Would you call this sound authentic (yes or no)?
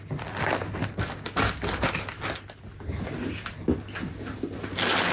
yes